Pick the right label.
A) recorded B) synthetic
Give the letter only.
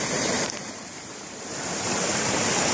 B